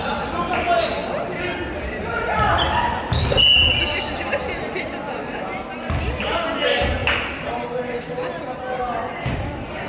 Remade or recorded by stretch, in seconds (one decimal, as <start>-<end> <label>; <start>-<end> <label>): 0.0-7.0 recorded; 7.0-8.8 remade; 8.8-9.9 recorded